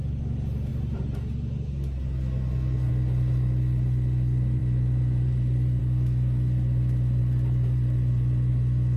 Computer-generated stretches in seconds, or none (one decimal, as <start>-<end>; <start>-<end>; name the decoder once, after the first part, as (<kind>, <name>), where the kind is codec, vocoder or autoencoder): 4.6-5.8 (vocoder, BigVGAN v2); 7.2-8.5